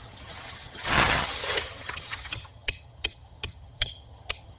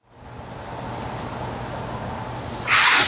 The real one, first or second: second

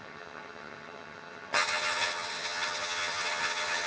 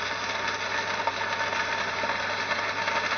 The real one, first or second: second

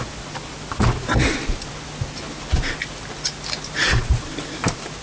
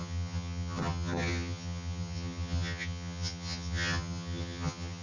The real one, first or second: first